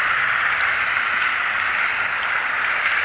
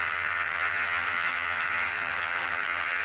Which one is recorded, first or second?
first